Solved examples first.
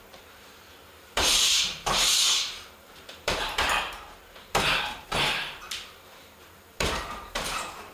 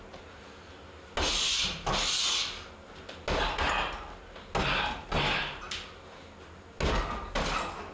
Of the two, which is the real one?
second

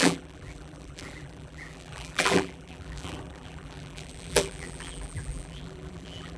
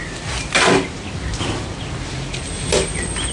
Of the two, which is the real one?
second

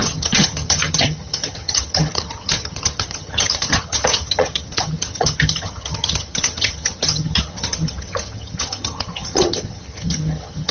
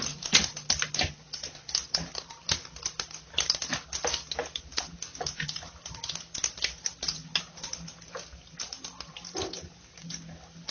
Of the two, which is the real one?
second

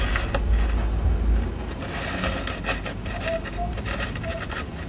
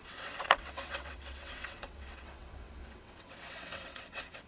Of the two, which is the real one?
first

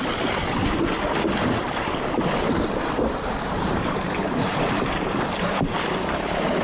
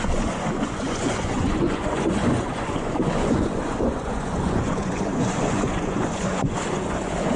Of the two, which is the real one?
first